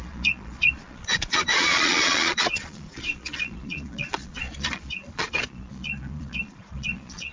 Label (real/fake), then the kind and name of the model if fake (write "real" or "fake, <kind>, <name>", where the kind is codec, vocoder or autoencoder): fake, vocoder, Vocos